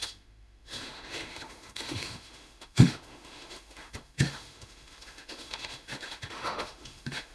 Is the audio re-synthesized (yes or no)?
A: yes